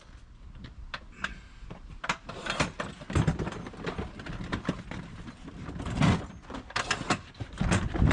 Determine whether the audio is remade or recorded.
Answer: remade